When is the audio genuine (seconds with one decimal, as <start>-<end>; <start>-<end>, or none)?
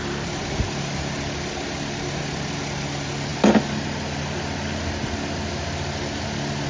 0.0-6.7